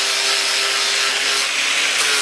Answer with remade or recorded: recorded